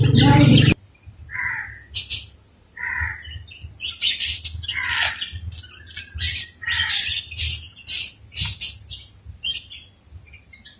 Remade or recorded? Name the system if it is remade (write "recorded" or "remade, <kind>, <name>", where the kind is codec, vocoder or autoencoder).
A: recorded